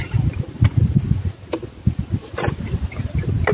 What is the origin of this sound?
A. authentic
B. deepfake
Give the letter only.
A